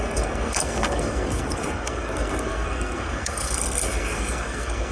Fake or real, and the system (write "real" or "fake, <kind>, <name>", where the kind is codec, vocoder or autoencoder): fake, codec, SNAC